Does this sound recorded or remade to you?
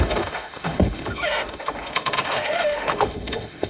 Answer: remade